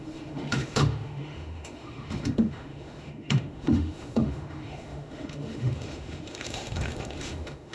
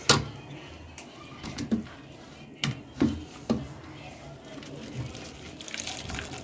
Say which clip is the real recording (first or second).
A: second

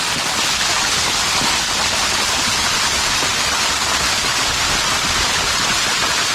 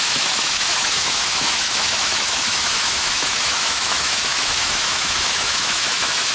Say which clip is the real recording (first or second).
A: first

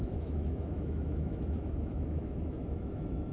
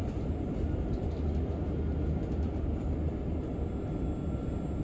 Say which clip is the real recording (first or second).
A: second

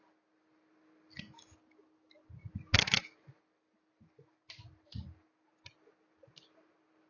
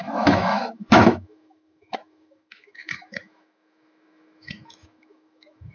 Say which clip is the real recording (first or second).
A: first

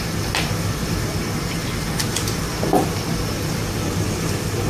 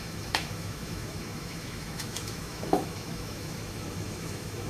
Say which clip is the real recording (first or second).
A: first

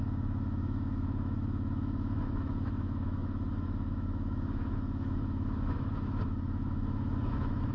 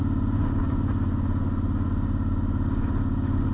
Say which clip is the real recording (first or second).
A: second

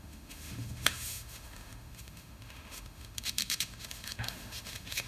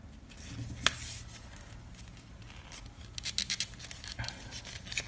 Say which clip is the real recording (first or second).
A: second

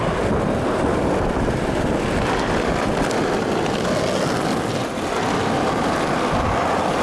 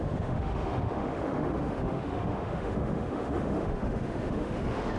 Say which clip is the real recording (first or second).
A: first